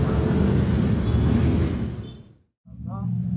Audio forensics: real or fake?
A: real